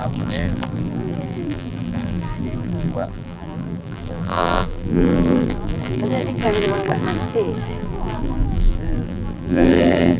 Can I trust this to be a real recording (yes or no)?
no